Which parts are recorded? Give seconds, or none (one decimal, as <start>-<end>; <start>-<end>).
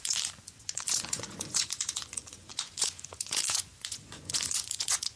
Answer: none